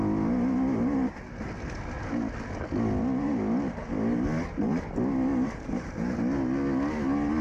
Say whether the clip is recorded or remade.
recorded